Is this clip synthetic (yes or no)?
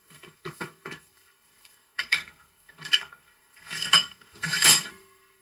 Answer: yes